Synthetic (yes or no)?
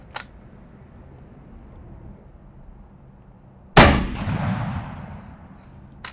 no